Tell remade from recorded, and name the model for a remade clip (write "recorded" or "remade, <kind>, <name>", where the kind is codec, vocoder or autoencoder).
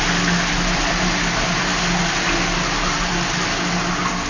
recorded